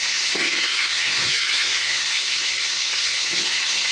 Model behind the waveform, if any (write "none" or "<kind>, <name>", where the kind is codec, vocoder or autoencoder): codec, SNAC